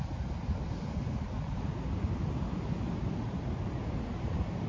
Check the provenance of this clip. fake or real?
real